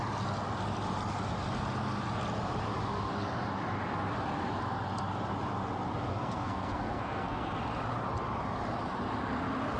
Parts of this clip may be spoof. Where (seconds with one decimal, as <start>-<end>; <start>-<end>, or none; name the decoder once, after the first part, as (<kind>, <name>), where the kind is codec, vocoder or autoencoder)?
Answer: 6.1-7.6 (codec, SNAC)